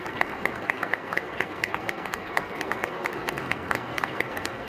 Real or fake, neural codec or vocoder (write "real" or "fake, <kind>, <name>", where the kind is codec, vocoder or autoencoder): fake, codec, SNAC